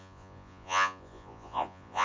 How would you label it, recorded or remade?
remade